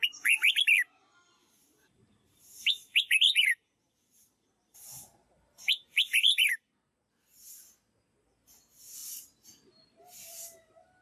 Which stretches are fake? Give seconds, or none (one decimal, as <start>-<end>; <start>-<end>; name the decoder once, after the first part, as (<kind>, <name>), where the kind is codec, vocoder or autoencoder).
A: 1.4-6.5 (vocoder, BigVGAN v2)